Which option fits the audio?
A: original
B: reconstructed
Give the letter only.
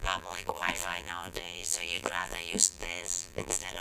B